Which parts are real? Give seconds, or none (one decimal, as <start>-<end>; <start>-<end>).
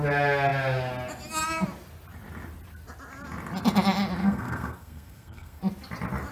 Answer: 0.0-4.2; 5.6-6.3